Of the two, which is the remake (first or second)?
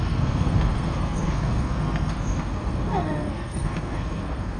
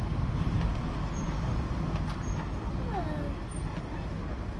first